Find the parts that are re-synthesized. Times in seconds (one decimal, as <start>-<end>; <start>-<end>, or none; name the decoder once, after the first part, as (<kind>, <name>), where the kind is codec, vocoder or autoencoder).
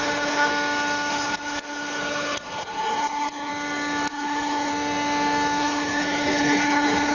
0.0-0.5 (codec, HILCodec); 1.1-3.5; 4.1-4.7; 5.6-7.1